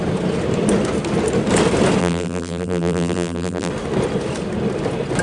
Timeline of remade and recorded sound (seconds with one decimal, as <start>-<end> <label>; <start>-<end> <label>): 0.0-2.0 recorded; 2.0-3.7 remade; 3.7-5.2 recorded